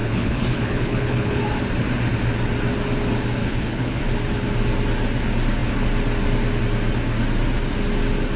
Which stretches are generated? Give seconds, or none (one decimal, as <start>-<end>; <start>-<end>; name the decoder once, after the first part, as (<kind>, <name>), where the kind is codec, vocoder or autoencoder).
0.0-1.4 (codec, HILCodec); 3.4-4.0